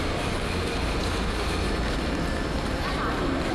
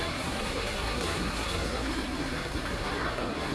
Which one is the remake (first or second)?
second